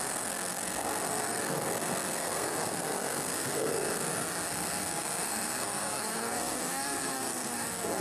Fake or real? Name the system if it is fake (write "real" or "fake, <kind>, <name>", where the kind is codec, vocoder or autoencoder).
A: fake, codec, SNAC